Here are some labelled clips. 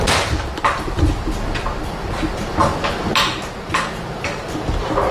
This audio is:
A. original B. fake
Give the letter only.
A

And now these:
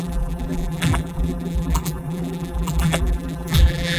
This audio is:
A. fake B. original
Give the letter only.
A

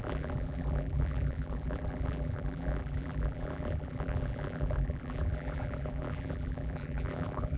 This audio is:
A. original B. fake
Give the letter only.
B